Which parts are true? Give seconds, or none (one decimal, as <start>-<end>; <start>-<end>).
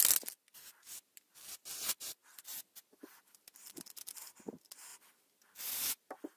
0.0-6.4